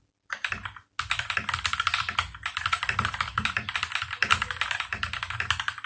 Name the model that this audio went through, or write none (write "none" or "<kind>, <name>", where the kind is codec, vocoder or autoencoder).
none